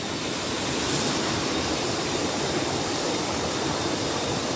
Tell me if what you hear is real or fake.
real